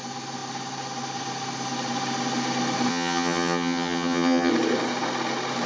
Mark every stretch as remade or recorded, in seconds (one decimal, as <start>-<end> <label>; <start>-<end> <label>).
0.0-2.9 recorded; 2.9-4.5 remade; 4.5-5.7 recorded